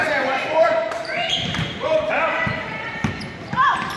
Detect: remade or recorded remade